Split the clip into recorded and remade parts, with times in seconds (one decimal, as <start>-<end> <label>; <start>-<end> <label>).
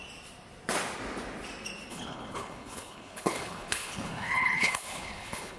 0.0-1.9 recorded; 1.9-5.6 remade